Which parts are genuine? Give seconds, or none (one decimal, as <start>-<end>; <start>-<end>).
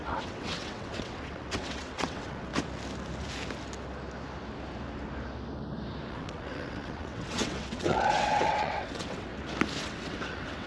2.5-6.1; 9.3-9.8